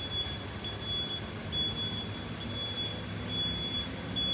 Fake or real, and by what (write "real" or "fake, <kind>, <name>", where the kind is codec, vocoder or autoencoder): real